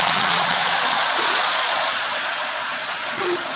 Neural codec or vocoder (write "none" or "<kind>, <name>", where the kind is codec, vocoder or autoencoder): vocoder, Vocos